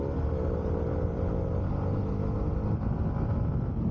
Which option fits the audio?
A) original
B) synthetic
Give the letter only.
A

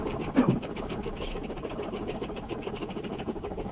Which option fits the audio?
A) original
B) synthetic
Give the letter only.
B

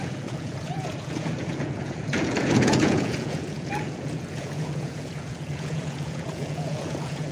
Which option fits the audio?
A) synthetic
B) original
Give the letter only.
A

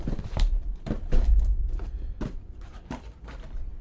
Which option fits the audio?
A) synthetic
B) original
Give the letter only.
A